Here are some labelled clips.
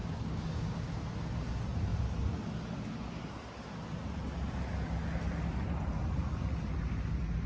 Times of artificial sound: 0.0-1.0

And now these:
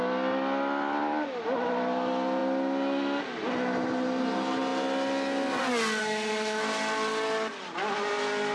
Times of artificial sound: 6.0-6.6

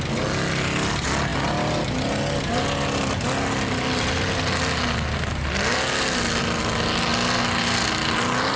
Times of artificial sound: none

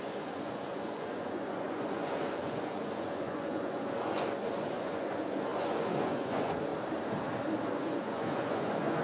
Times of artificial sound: 0.0-6.7; 7.7-9.0

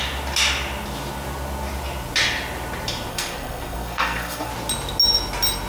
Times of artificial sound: 3.1-4.5

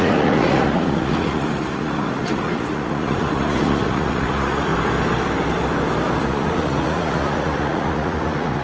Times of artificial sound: 0.0-4.7; 6.2-8.6

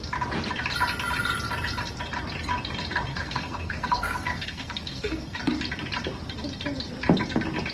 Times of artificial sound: 3.1-5.4